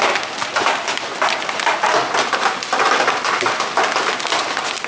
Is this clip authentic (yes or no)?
yes